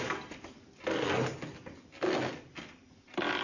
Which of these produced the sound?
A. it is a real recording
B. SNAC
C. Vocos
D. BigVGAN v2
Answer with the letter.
A